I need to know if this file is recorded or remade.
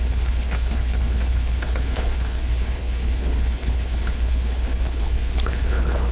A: remade